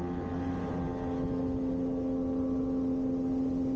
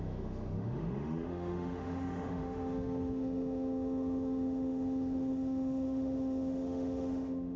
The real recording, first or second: first